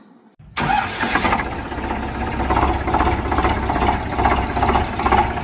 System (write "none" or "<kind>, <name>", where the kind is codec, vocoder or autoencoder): none